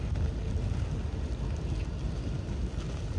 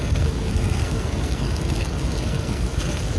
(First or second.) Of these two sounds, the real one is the first